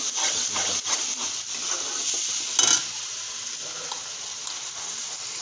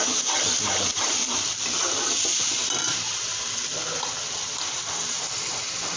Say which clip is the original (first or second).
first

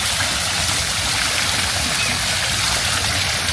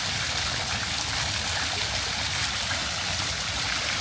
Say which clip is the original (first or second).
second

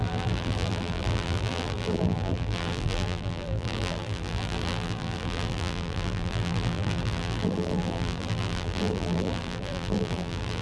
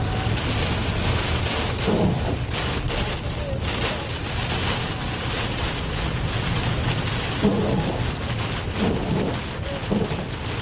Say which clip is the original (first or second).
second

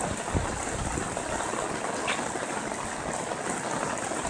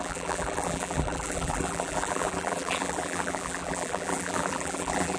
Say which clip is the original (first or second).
first